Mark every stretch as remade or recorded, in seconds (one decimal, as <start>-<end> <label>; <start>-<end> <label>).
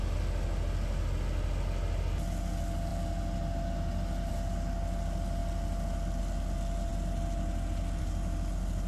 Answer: 0.0-8.9 recorded